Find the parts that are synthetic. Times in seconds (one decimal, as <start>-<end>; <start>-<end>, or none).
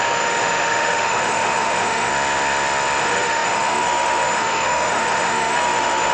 0.0-2.1; 3.0-6.1